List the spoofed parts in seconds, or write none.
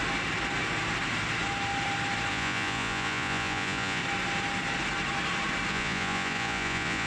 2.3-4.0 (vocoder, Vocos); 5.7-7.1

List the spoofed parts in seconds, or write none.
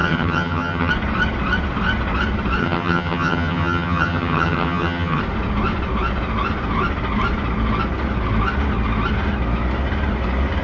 0.0-0.9 (vocoder, HiFi-GAN); 2.6-5.2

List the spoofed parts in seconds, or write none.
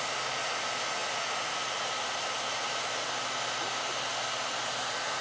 none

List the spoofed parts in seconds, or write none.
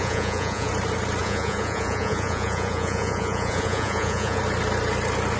0.0-0.7 (vocoder, Vocos); 1.2-4.4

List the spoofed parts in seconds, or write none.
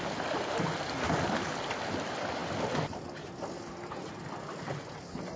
none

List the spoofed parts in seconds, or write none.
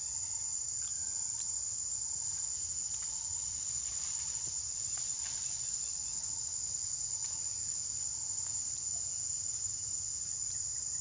2.8-6.5 (vocoder, Vocos)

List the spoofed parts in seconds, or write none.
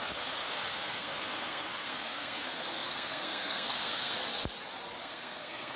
0.0-4.2 (codec, SNAC); 5.0-5.8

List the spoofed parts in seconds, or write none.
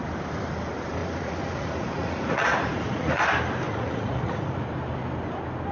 1.0-3.2 (vocoder, Vocos); 3.7-4.6